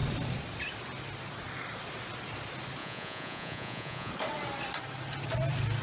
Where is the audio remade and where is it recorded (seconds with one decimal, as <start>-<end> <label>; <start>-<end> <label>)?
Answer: 0.0-2.8 recorded; 2.8-4.1 remade; 4.1-5.8 recorded